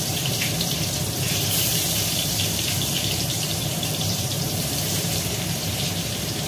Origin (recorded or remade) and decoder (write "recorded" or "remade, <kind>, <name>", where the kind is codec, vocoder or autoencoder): remade, vocoder, BigVGAN v2